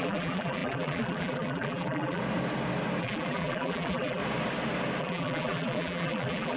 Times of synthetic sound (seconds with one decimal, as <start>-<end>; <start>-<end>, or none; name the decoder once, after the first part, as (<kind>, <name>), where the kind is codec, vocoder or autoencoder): 0.0-2.2 (vocoder, BigVGAN v2); 3.0-4.2; 5.0-6.6